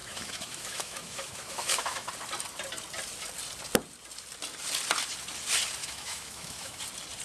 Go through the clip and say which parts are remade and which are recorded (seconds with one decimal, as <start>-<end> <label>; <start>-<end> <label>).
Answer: 0.0-2.1 remade; 2.1-5.8 recorded; 5.8-6.8 remade; 6.8-7.2 recorded